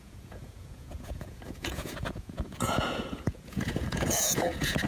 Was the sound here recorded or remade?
remade